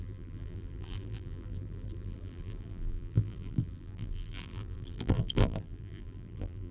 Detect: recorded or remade remade